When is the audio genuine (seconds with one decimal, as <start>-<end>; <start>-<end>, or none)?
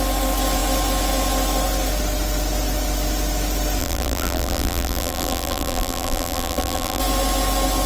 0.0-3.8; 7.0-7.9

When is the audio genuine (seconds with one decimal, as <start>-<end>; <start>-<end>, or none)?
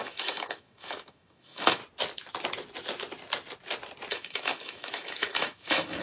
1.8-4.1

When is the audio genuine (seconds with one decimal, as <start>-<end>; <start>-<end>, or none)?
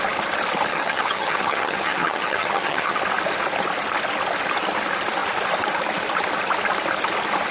0.0-0.7; 3.0-7.5